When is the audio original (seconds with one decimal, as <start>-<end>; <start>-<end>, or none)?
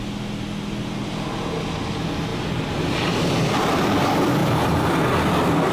0.0-4.4; 5.0-5.7